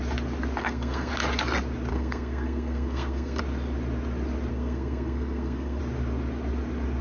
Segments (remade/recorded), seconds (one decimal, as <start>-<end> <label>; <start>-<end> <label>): 0.0-0.6 recorded; 0.6-1.1 remade; 1.1-1.9 recorded; 1.9-3.4 remade; 3.4-4.5 recorded; 4.5-5.8 remade; 5.8-7.0 recorded